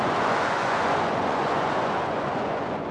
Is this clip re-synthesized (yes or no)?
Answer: yes